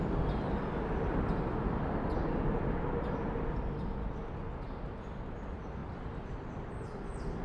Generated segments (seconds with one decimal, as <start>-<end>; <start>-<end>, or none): none